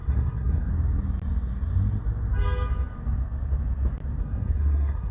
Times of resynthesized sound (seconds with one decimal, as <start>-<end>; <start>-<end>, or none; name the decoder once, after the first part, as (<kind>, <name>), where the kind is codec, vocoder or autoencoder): 0.0-0.7 (codec, SNAC); 4.2-5.1

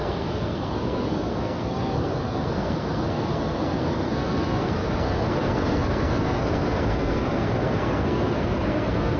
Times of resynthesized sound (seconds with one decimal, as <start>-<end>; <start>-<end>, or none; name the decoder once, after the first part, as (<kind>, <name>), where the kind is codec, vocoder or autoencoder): 0.0-9.2 (codec, SNAC)

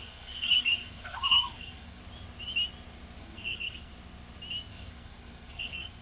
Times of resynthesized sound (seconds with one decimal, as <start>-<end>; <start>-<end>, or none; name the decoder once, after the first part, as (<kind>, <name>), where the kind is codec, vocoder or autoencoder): 0.0-2.0 (codec, SNAC); 3.2-3.9; 4.7-6.0

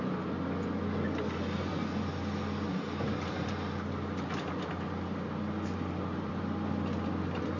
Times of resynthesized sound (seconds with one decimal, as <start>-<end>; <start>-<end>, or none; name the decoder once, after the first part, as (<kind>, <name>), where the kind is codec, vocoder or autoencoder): none

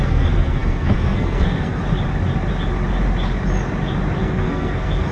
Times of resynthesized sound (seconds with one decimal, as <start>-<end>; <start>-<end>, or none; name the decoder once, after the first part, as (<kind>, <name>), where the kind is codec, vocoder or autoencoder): 0.0-1.8 (codec, SNAC); 4.2-5.1

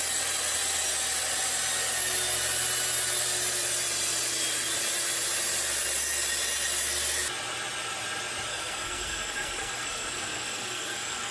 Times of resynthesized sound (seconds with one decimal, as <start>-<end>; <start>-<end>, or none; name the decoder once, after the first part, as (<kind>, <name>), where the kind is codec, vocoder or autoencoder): 8.5-11.3 (codec, SNAC)